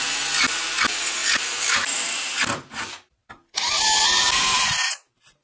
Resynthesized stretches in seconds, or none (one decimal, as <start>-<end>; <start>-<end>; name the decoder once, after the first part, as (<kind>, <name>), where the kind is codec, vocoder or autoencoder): 1.2-3.3 (vocoder, BigVGAN v2)